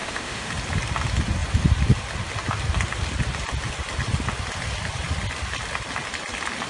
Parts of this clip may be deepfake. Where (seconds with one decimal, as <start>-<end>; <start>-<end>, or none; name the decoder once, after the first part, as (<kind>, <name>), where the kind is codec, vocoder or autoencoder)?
0.0-0.5 (autoencoder, DAC-VAE)